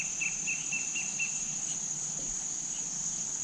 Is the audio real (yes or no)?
yes